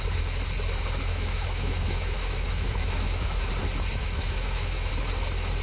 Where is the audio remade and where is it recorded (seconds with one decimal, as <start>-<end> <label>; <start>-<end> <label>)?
0.0-1.1 recorded; 1.1-3.5 remade; 3.5-4.0 recorded; 4.0-4.9 remade; 4.9-5.6 recorded